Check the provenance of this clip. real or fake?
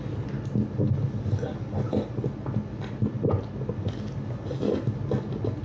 real